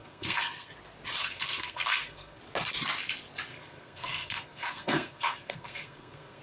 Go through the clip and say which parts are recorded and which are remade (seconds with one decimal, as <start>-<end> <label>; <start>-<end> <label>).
0.0-0.7 remade; 0.7-1.2 recorded; 1.2-2.4 remade; 2.4-3.5 recorded; 3.5-6.4 remade